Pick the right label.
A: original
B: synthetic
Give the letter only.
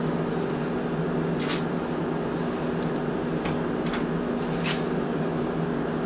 A